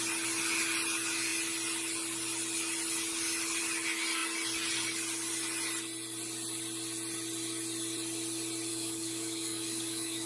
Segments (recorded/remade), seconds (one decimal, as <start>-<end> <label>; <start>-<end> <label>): 0.0-8.7 recorded; 8.7-10.3 remade